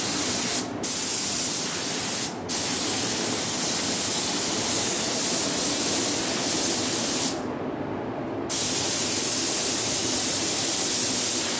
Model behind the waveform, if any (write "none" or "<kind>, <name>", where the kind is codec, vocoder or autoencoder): none